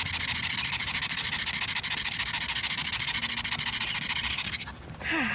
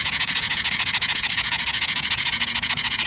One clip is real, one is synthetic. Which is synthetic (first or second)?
second